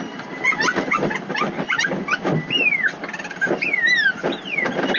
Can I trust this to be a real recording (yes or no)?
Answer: yes